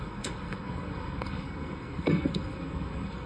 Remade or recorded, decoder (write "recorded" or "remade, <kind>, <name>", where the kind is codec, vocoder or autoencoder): remade, codec, SNAC